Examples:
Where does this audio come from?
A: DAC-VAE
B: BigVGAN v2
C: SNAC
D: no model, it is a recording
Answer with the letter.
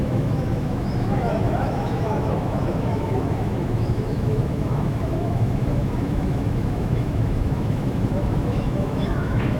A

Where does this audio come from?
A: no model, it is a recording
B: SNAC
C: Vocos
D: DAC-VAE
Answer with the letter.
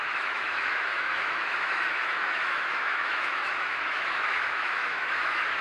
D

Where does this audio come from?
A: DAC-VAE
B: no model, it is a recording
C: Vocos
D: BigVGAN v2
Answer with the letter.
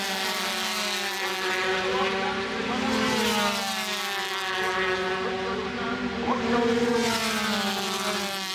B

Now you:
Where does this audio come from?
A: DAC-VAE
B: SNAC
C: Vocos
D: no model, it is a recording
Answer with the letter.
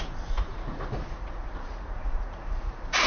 C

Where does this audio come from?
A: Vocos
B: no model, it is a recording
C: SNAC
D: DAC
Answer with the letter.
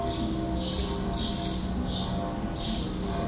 B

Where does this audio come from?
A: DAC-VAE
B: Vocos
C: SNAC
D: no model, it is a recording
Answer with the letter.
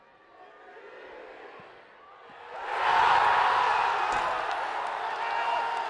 D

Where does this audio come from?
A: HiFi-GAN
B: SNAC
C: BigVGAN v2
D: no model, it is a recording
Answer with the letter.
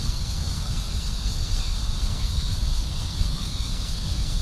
B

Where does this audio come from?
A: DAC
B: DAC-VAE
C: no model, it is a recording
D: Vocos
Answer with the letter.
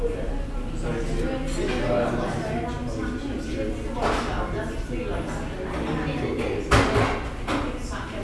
C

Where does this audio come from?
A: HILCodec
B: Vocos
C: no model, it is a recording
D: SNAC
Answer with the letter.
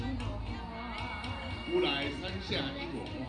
C